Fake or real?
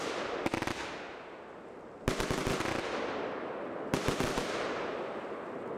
real